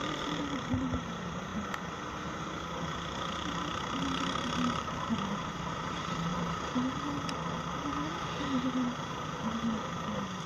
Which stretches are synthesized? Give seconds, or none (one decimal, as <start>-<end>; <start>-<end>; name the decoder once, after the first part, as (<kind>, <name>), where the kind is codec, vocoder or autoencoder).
0.0-1.5 (vocoder, BigVGAN v2); 3.3-6.3